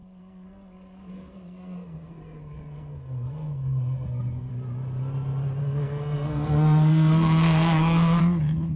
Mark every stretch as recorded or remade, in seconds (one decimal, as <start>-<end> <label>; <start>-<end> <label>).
0.0-4.5 remade; 4.5-5.6 recorded; 5.6-8.2 remade; 8.2-8.8 recorded